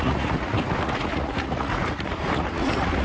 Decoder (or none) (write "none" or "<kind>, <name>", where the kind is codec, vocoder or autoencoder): vocoder, Vocos